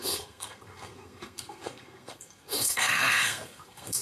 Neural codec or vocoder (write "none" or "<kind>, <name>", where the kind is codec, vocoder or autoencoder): codec, SNAC